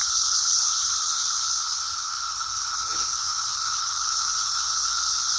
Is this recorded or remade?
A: remade